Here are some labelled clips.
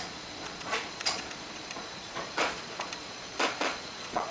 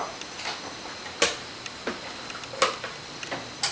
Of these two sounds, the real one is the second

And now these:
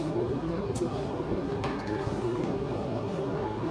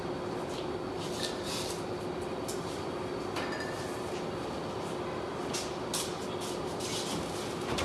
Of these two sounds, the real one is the second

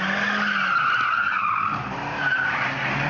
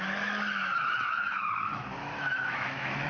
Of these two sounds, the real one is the first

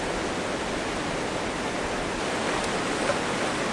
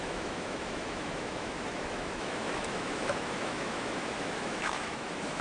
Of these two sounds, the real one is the first